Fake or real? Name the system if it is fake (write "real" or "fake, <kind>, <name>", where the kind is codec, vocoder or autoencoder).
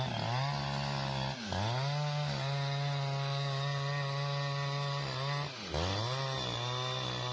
real